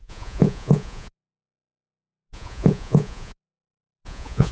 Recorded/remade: remade